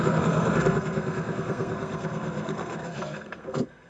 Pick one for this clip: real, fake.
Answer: fake